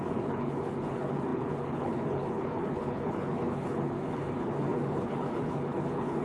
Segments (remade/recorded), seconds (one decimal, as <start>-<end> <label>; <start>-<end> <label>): 0.0-6.2 remade